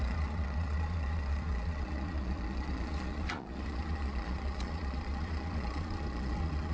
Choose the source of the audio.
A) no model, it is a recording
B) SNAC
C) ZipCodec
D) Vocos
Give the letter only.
D